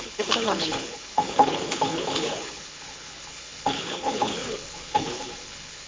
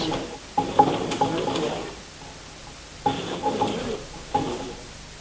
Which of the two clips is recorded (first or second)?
second